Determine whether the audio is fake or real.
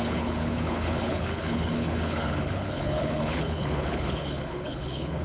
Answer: fake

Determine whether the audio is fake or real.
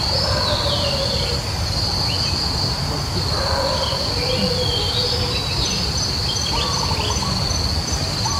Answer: real